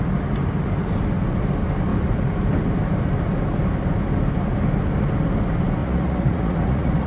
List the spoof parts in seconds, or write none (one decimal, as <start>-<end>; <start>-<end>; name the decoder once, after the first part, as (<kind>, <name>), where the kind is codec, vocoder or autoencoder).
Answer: 5.8-7.1 (vocoder, Vocos)